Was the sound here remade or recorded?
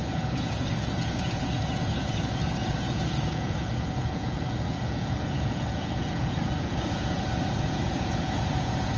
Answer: remade